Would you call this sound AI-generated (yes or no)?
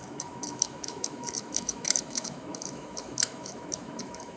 yes